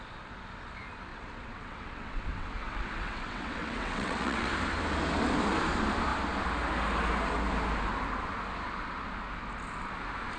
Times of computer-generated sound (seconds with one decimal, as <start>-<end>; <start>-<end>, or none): 1.1-4.5